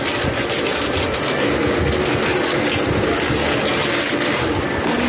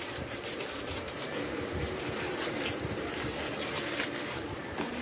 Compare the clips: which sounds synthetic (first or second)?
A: second